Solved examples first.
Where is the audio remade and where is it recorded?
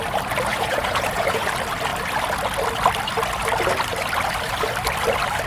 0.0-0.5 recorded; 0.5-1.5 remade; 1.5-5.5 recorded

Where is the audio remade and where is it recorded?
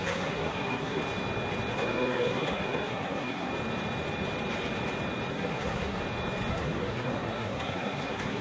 0.0-1.0 remade; 1.0-1.7 recorded; 1.7-3.5 remade; 3.5-5.3 recorded; 5.3-6.0 remade; 6.0-6.5 recorded; 6.5-8.4 remade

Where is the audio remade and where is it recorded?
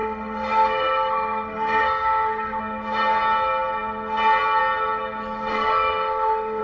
0.0-2.6 remade; 2.6-5.5 recorded; 5.5-6.6 remade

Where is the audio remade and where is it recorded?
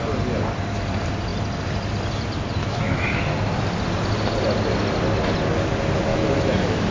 0.0-2.6 recorded; 2.6-3.2 remade; 3.2-6.1 recorded; 6.1-6.9 remade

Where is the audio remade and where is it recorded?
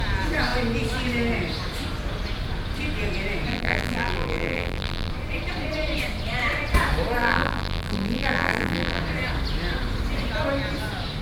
0.0-3.5 recorded; 3.5-5.1 remade; 5.1-7.2 recorded; 7.2-9.0 remade; 9.0-11.2 recorded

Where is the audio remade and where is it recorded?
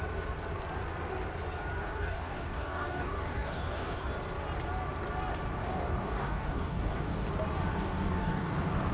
0.0-1.8 recorded; 1.8-4.1 remade; 4.1-5.6 recorded; 5.6-7.3 remade; 7.3-7.7 recorded; 7.7-8.5 remade; 8.5-8.9 recorded